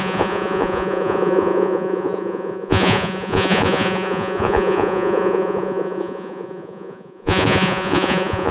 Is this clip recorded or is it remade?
remade